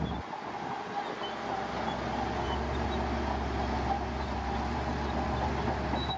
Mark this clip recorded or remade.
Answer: recorded